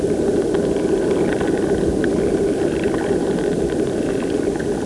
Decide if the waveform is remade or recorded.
recorded